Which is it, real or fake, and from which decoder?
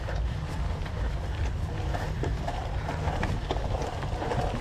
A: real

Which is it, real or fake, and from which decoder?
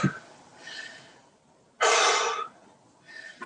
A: real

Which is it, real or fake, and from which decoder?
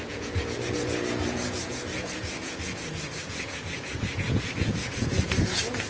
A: fake, vocoder, Vocos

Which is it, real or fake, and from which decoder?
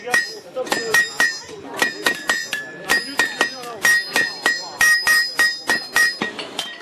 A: fake, vocoder, BigVGAN v2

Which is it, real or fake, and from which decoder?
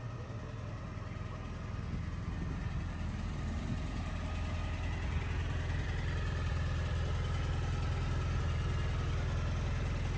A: real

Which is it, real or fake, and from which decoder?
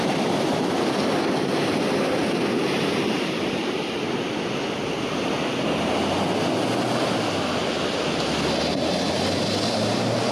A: real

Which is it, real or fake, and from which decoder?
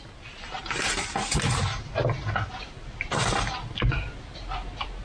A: real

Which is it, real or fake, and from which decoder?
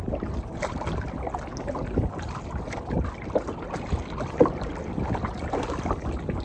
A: real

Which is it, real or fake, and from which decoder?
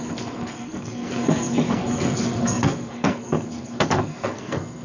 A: fake, codec, SNAC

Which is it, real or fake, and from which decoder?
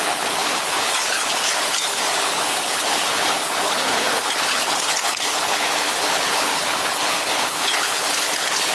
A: fake, codec, HILCodec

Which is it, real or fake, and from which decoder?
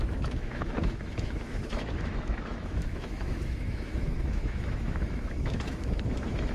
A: fake, autoencoder, DAC-VAE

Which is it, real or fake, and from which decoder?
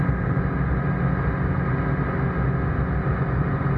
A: real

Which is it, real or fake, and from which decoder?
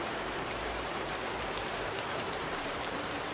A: fake, vocoder, BigVGAN v2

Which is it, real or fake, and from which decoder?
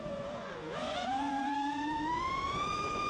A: fake, vocoder, Vocos